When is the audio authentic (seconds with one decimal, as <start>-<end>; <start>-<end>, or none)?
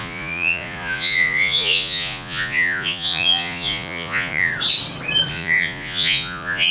4.5-5.3